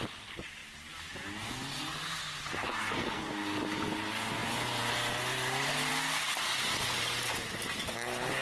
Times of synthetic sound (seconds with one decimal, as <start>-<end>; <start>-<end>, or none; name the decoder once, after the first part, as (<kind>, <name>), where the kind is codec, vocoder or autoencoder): 2.7-3.3 (codec, SNAC)